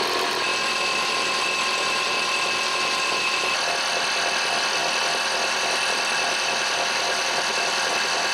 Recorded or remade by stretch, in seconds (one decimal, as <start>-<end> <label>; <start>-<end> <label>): 0.0-0.5 recorded; 0.5-3.5 remade; 3.5-4.8 recorded; 4.8-7.9 remade; 7.9-8.3 recorded